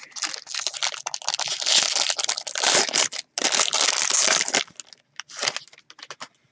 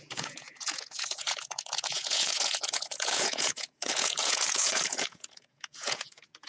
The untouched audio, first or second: first